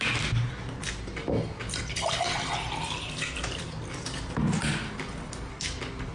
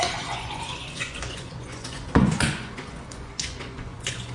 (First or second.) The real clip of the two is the first